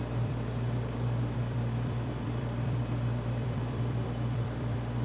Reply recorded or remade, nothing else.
remade